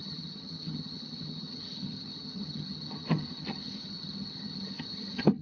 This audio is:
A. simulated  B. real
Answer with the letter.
A